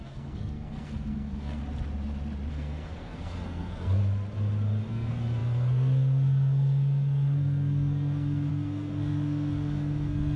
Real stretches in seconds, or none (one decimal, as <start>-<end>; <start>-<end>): 1.6-2.5; 4.0-4.9